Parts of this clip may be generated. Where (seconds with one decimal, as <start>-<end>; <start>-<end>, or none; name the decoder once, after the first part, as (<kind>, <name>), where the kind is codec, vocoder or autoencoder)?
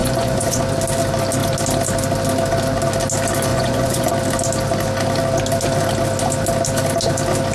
0.0-0.6 (vocoder, Vocos); 3.5-4.1